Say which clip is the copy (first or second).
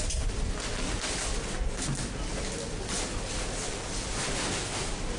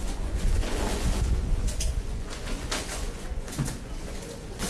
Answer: second